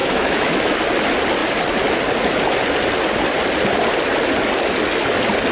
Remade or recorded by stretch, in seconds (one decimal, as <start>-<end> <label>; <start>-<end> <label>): 0.0-0.8 remade; 0.8-5.5 recorded